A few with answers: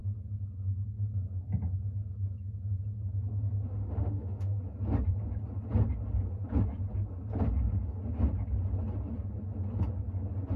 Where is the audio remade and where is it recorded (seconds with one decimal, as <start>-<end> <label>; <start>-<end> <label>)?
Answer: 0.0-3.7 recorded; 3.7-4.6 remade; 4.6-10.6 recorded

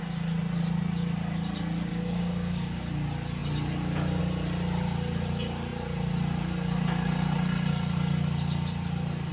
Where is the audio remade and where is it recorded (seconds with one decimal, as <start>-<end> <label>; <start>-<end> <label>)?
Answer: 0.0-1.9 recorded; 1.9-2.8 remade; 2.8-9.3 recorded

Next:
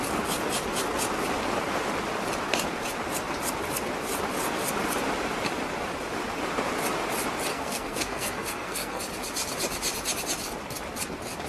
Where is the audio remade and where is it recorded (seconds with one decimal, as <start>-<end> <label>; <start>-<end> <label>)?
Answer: 0.0-7.5 recorded; 7.5-9.0 remade; 9.0-11.5 recorded

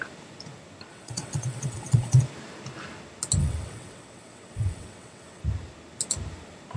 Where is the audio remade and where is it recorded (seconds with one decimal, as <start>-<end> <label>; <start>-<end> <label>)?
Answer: 0.0-0.9 recorded; 0.9-2.2 remade; 2.2-3.4 recorded; 3.4-5.4 remade; 5.4-6.8 recorded

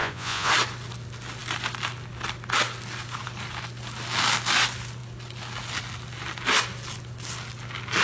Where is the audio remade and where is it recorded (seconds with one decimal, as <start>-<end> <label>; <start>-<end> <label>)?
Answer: 0.0-0.5 remade; 0.5-8.0 recorded

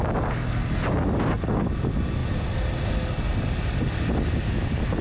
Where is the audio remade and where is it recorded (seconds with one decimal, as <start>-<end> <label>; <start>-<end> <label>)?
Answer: 0.0-5.0 recorded

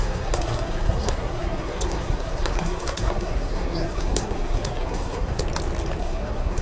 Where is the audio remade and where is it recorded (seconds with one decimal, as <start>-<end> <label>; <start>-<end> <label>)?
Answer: 0.0-5.4 remade; 5.4-6.0 recorded; 6.0-6.6 remade

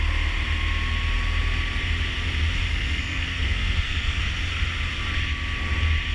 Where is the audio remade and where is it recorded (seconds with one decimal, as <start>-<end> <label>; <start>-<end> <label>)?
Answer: 0.0-2.7 recorded; 2.7-4.2 remade; 4.2-6.1 recorded